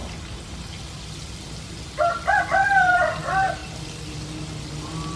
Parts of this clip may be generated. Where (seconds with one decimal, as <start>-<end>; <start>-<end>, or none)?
none